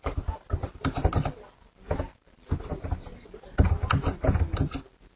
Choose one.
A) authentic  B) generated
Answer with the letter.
A